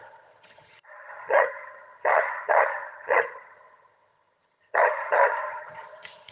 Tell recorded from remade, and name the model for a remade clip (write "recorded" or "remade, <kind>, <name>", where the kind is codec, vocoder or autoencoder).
remade, vocoder, HiFi-GAN